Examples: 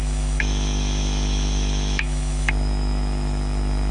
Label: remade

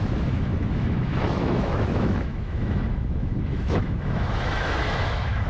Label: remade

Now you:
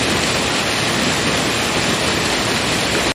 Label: recorded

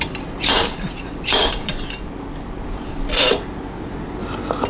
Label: recorded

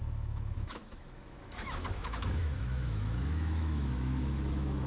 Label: remade